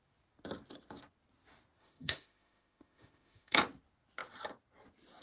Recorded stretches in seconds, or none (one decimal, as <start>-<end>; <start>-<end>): 0.0-1.8; 3.6-5.2